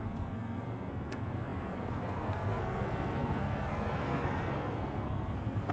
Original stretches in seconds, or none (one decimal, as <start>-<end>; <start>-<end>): none